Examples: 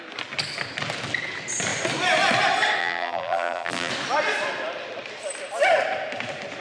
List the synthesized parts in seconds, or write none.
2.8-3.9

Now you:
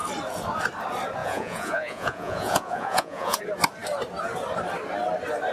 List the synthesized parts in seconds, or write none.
1.2-3.4

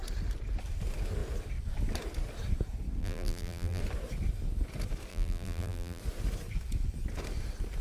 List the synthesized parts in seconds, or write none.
3.0-3.8; 5.1-6.0

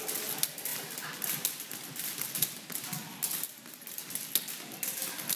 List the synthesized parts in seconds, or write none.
none

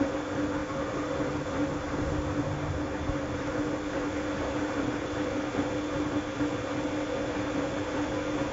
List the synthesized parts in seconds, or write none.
none

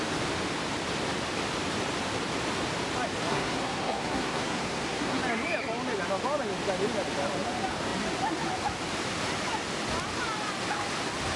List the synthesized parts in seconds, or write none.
3.3-5.2

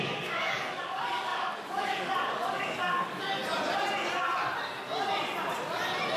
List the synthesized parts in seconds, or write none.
0.0-3.4

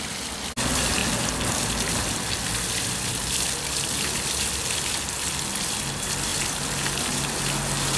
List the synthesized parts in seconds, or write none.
none